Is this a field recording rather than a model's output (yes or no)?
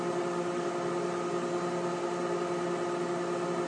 yes